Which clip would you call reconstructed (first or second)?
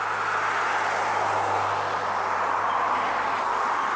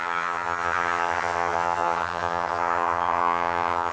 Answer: second